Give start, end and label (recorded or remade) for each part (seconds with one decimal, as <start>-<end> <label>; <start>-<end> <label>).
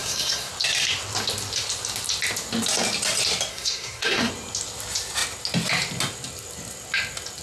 0.0-0.5 remade; 0.5-3.5 recorded; 3.5-4.3 remade; 4.3-7.4 recorded